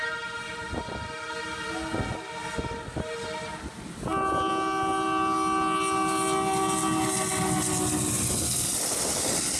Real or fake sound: real